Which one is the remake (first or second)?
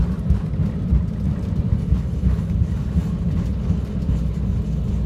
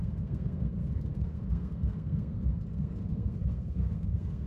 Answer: second